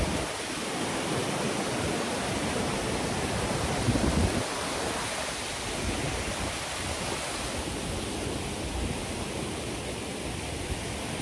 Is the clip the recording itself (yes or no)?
yes